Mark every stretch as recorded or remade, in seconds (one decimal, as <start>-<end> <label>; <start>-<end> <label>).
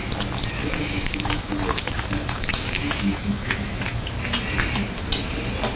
0.0-0.6 recorded; 0.6-4.1 remade; 4.1-5.8 recorded